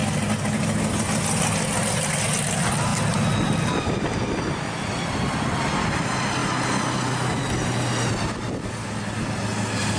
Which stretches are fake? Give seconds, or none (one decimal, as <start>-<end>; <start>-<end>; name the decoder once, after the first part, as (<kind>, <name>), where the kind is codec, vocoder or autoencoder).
none